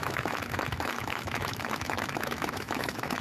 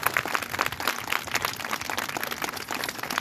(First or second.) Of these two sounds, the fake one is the first